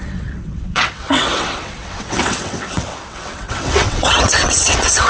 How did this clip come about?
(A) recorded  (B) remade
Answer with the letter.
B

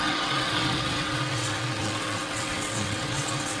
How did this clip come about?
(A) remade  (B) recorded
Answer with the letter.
A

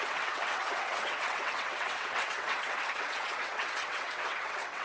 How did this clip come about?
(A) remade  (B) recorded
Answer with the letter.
A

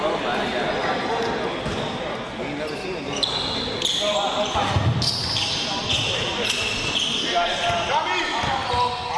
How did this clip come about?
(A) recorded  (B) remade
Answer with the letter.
A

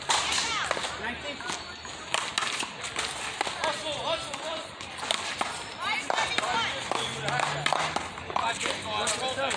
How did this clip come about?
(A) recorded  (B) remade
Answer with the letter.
A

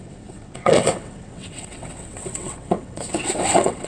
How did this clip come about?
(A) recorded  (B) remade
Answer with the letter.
B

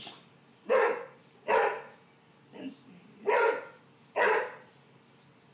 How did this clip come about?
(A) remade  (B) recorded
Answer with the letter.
B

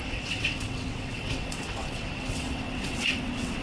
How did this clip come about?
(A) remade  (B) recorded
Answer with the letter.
A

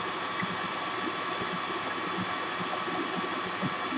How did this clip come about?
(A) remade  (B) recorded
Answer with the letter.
B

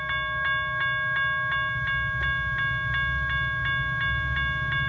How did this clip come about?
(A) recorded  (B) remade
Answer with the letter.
A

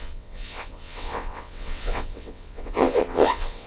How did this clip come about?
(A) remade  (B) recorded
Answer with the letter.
A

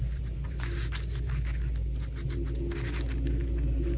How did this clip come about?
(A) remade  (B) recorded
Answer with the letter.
B